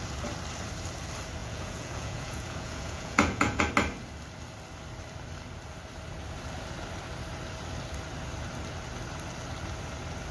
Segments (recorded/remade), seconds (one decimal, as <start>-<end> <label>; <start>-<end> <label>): 0.0-1.4 recorded; 1.4-3.6 remade; 3.6-10.3 recorded